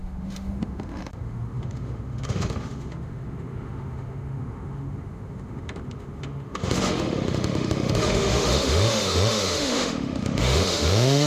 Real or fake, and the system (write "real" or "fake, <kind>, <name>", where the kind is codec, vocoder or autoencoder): fake, autoencoder, DAC-VAE